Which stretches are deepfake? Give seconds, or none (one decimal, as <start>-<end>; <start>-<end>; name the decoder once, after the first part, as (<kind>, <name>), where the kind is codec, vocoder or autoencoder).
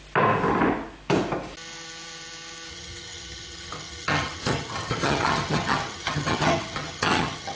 2.7-7.6 (vocoder, HiFi-GAN)